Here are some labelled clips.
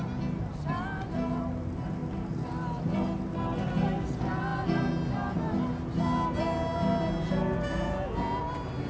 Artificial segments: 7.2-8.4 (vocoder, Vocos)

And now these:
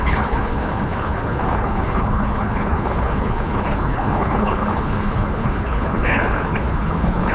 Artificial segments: 0.0-7.3 (codec, HILCodec)

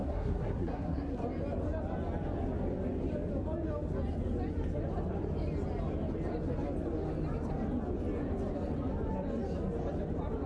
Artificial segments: 0.0-1.2 (codec, SNAC)

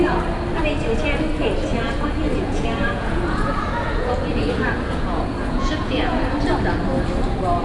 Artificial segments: 1.7-6.3 (vocoder, Vocos)

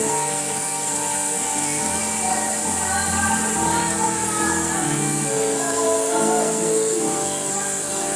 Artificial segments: 0.0-2.0 (codec, SNAC); 3.8-8.2

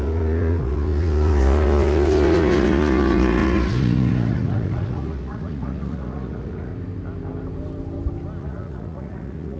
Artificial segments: 0.0-6.7 (vocoder, Vocos); 8.4-9.6

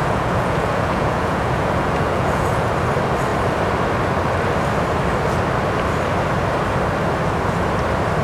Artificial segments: 0.0-2.7 (vocoder, Vocos)

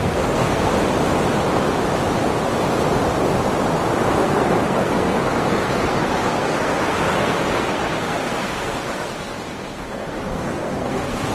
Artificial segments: 0.0-0.7 (codec, SNAC); 4.1-11.3